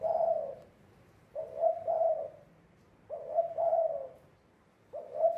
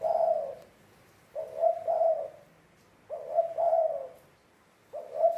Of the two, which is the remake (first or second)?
first